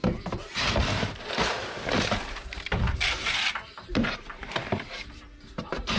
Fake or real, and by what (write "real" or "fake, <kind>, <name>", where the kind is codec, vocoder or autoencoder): fake, vocoder, BigVGAN v2